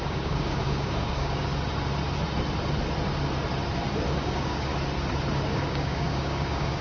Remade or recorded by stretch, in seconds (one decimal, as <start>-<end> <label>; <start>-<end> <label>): 0.0-1.5 remade; 1.5-4.1 recorded; 4.1-4.7 remade; 4.7-5.4 recorded; 5.4-6.8 remade